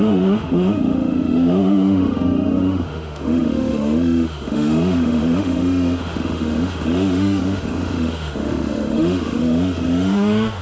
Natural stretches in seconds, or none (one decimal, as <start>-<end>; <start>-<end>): none